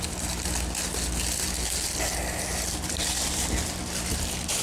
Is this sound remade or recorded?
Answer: recorded